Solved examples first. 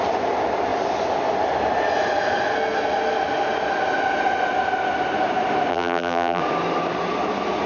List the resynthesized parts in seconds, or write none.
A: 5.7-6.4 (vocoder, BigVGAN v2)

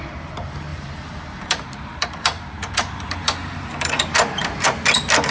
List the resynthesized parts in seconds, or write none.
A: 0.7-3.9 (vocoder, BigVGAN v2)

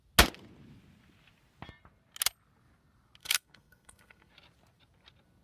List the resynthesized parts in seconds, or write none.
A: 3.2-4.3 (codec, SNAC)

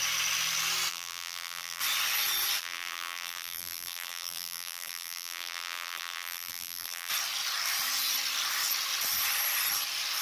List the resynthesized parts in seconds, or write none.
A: 0.9-1.8 (vocoder, BigVGAN v2); 2.6-7.1

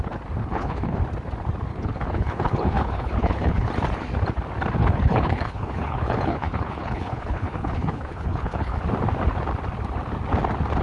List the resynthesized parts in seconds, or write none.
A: 0.4-1.0 (codec, HILCodec); 1.7-3.7; 4.8-8.8

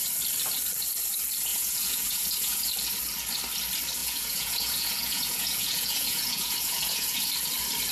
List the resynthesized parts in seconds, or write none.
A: 1.5-2.7 (vocoder, Vocos); 4.0-7.3

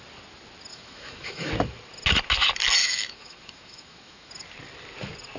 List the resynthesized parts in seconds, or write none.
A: 0.7-1.5 (autoencoder, DAC-VAE); 2.8-4.3

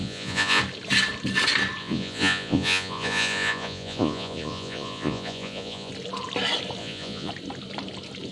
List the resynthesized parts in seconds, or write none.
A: 0.0-0.6 (vocoder, Vocos); 1.8-5.9; 6.8-7.3